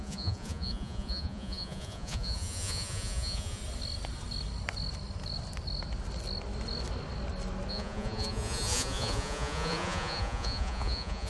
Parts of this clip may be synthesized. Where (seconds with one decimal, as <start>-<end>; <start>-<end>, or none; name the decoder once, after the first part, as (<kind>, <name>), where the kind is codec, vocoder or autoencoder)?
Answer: 0.0-3.6 (vocoder, Vocos); 7.7-11.3

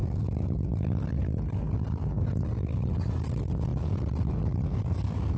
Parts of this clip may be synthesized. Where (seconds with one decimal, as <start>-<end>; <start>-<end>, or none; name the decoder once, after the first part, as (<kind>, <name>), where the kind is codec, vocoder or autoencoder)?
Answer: none

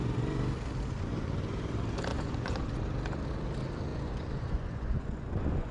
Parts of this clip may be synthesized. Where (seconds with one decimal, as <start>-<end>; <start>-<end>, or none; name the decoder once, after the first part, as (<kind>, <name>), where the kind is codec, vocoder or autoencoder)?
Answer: 2.1-2.8 (vocoder, Vocos); 3.9-5.7

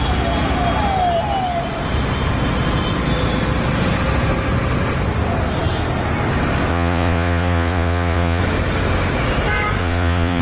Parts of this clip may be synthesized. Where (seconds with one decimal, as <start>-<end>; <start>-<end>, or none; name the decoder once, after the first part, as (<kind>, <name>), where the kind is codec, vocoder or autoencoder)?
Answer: 6.7-8.4 (vocoder, Vocos); 9.8-10.4

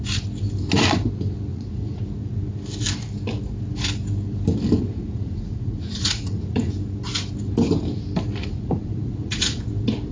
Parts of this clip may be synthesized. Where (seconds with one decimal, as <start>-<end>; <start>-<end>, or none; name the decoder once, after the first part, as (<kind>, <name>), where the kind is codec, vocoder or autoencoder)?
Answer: 1.5-2.0 (vocoder, Vocos); 4.9-6.7; 8.4-9.6

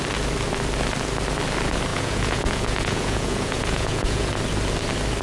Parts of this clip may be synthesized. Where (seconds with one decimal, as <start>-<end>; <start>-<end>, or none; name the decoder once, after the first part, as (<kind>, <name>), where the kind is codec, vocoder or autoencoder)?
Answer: 1.9-4.3 (vocoder, Vocos)

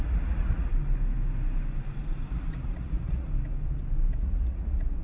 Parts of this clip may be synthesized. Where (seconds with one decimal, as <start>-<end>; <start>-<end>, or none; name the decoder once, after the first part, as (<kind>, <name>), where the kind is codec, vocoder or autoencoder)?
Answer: 0.0-0.7 (vocoder, Vocos); 2.3-3.3; 4.2-5.0

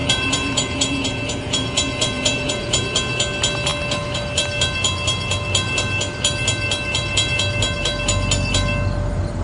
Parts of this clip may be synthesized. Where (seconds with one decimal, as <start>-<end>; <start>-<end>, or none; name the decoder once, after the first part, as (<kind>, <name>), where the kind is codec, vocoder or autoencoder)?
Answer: 0.0-2.8 (vocoder, Vocos)